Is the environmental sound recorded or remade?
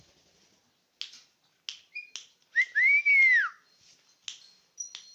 recorded